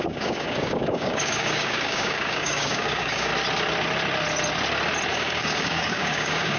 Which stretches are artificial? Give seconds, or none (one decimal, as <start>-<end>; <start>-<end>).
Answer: 0.0-3.3; 5.1-6.6